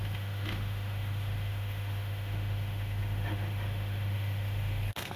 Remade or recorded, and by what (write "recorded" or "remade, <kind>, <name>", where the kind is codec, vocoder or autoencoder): remade, autoencoder, DAC-VAE